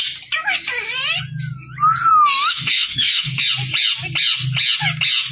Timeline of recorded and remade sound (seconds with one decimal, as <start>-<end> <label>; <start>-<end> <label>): 0.0-2.1 recorded; 2.1-3.4 remade; 3.4-5.3 recorded